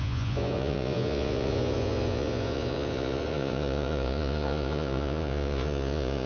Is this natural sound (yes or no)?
no